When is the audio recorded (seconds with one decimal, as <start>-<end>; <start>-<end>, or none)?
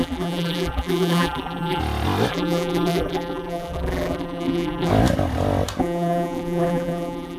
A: 1.8-2.3; 4.9-5.8